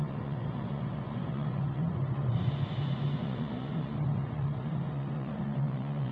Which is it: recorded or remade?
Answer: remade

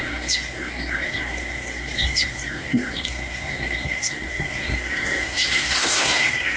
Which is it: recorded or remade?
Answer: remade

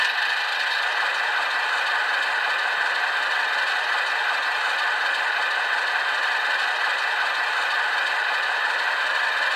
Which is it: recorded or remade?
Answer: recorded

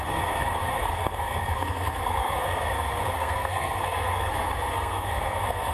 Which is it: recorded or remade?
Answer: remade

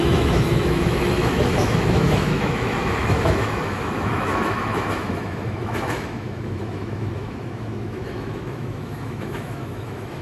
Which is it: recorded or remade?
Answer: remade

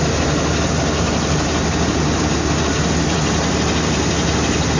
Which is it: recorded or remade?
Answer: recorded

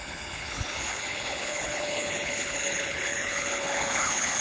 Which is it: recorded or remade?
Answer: remade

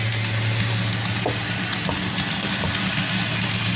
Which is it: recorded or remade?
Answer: recorded